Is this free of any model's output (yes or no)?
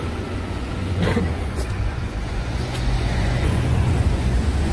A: no